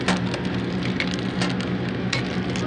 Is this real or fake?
real